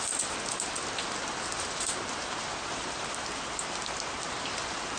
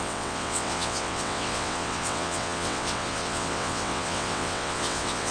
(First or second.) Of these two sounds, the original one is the first